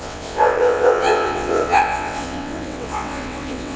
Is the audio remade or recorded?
remade